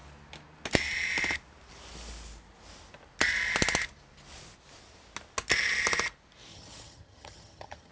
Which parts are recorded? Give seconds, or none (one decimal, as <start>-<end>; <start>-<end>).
0.0-6.5